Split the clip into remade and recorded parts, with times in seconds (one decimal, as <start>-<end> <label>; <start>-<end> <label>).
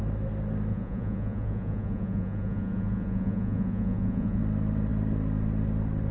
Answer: 0.0-0.7 recorded; 0.7-4.4 remade; 4.4-6.1 recorded